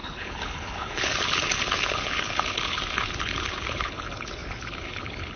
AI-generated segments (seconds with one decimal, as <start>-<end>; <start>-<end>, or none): 0.0-5.4